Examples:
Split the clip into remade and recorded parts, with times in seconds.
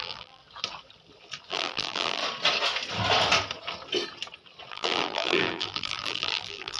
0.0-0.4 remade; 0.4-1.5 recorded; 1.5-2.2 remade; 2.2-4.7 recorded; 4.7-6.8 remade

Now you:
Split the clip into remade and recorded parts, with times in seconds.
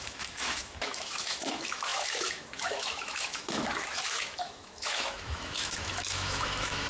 0.0-6.9 remade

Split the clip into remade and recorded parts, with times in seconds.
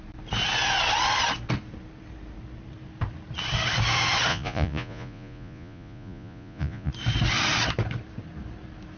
0.0-4.3 recorded; 4.3-6.9 remade; 6.9-9.0 recorded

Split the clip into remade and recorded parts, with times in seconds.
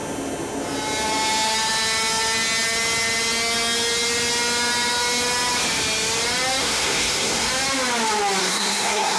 0.0-6.6 recorded; 6.6-7.5 remade; 7.5-8.4 recorded; 8.4-9.2 remade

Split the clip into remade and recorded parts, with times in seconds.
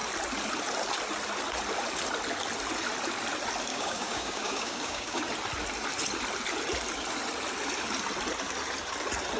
0.0-3.7 recorded; 3.7-5.2 remade; 5.2-9.4 recorded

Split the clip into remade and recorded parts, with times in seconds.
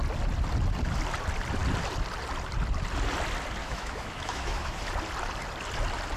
0.0-3.6 recorded; 3.6-4.8 remade; 4.8-6.2 recorded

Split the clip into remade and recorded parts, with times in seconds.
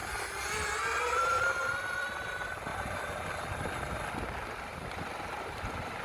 0.0-6.0 recorded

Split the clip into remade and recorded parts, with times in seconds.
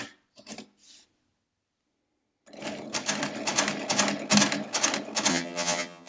0.0-5.3 recorded; 5.3-6.1 remade